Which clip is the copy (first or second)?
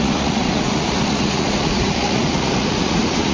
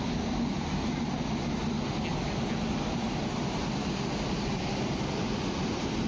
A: first